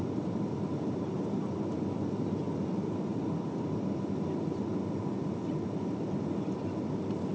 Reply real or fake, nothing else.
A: real